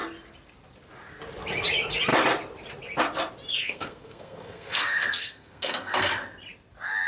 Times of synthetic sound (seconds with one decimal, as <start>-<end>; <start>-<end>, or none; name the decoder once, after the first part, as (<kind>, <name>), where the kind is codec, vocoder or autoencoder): 3.5-6.1 (codec, SNAC)